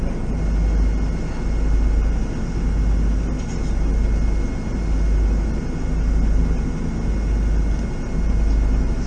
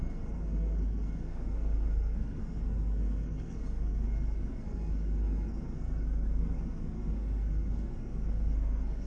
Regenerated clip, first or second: second